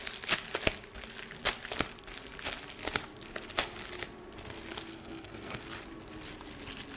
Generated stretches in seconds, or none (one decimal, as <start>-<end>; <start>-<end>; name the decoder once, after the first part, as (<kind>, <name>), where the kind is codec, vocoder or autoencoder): 4.9-5.6 (codec, SNAC)